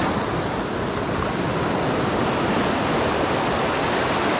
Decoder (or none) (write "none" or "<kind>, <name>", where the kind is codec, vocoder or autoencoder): none